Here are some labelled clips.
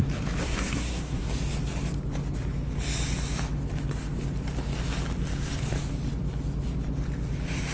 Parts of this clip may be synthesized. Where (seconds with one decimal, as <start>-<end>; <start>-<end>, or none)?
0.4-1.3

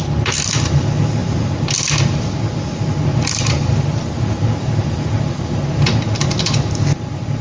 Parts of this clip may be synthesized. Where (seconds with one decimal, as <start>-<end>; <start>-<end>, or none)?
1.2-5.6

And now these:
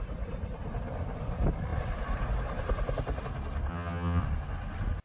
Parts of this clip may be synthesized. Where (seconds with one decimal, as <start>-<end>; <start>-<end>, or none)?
3.7-4.2

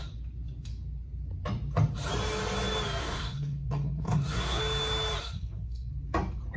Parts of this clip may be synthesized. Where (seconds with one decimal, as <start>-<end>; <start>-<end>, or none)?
3.0-4.6; 5.2-5.9

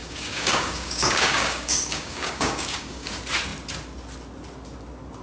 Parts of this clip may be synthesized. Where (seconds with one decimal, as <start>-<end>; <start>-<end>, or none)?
0.0-3.1

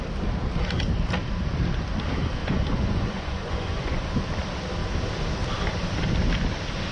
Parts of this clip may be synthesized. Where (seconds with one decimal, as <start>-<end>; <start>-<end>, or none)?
2.4-4.2